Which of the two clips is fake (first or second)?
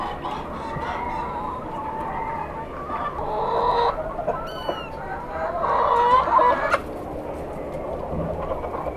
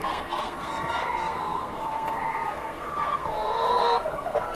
second